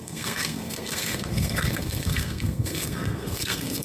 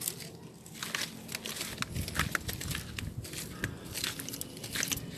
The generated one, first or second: first